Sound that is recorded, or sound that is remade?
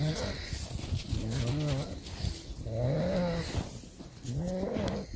recorded